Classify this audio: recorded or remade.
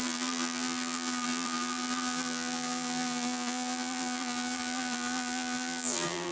remade